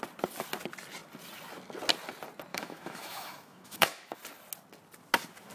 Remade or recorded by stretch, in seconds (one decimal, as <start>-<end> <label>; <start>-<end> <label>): 0.0-2.5 recorded; 2.5-4.2 remade; 4.2-5.5 recorded